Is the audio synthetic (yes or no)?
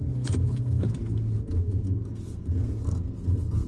yes